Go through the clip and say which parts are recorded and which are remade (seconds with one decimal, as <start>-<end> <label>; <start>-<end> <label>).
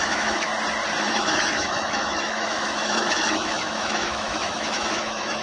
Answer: 0.0-0.5 remade; 0.5-1.0 recorded; 1.0-5.4 remade